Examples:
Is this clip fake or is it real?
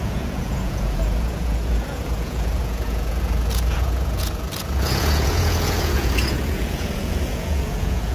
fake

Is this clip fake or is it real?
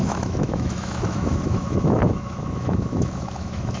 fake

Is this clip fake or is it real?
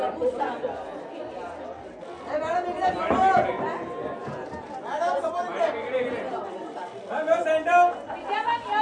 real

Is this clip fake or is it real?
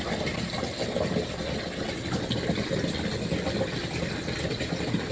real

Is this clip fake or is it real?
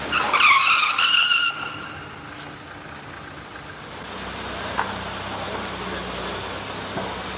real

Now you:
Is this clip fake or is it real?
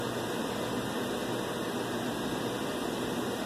real